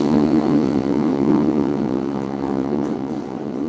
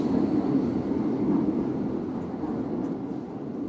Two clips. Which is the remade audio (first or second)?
first